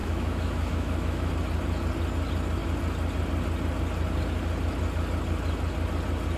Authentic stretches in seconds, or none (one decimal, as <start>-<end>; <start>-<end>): 1.3-6.4